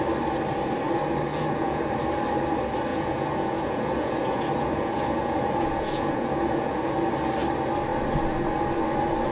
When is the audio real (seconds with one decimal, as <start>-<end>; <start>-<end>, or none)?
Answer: 0.0-1.3; 1.8-2.9; 7.1-9.3